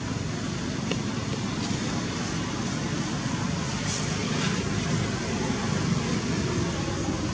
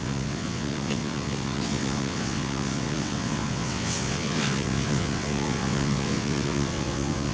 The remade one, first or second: second